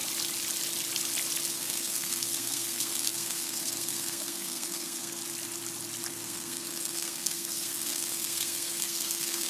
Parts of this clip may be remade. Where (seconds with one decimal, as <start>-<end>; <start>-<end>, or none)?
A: 1.5-5.2; 6.1-9.5